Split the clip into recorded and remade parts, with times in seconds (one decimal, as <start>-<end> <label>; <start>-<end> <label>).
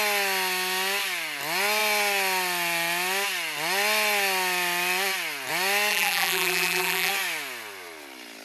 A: 0.0-5.9 recorded; 5.9-7.1 remade; 7.1-8.4 recorded